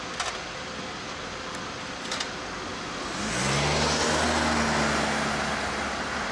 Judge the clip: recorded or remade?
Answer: recorded